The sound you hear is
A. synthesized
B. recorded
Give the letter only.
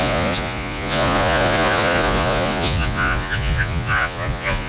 A